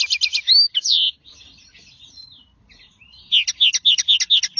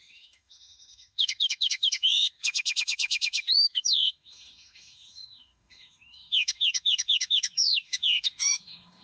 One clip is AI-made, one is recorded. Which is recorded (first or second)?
first